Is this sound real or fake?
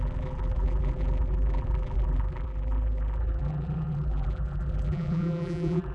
fake